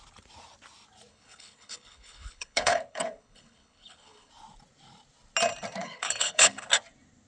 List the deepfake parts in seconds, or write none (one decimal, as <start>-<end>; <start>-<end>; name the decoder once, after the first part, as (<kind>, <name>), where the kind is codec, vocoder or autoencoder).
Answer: 1.1-4.3 (codec, HILCodec); 5.8-6.7